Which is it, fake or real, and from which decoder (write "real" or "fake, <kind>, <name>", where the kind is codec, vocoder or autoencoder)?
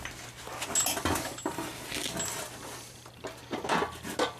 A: real